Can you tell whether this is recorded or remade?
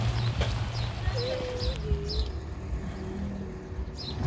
recorded